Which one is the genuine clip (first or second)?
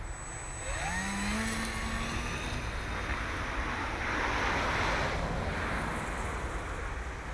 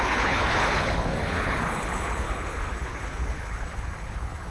first